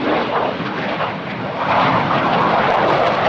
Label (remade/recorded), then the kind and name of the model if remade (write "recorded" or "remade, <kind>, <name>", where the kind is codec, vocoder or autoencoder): recorded